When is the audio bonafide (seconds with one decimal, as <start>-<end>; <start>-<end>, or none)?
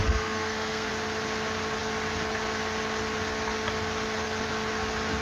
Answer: 0.9-5.2